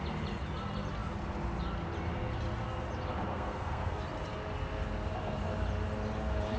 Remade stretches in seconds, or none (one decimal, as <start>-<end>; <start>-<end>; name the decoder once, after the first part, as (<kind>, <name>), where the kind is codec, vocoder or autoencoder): 3.3-4.0 (codec, SNAC)